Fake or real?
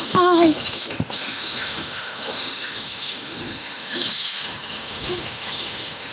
fake